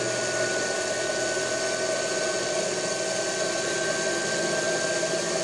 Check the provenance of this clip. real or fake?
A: real